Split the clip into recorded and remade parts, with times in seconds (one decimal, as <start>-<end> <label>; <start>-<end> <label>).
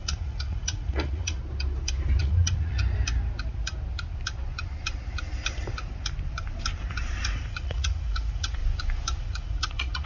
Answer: 0.0-1.4 remade; 1.4-2.2 recorded; 2.2-2.8 remade; 2.8-7.2 recorded; 7.2-8.6 remade; 8.6-9.2 recorded; 9.2-10.1 remade